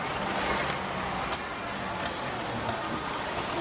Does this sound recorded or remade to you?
recorded